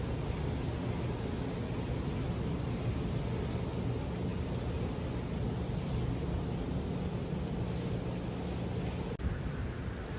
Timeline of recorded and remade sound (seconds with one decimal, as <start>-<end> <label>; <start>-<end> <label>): 0.0-10.2 recorded